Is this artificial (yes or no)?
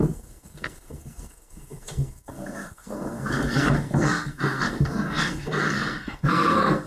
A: yes